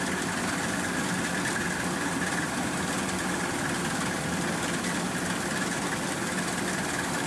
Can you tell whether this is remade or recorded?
recorded